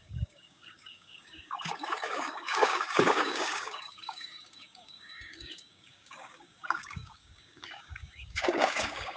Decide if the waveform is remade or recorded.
remade